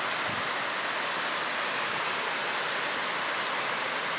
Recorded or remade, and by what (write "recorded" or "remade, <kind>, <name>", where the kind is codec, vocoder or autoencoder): recorded